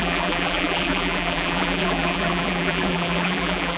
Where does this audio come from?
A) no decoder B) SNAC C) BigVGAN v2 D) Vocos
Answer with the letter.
C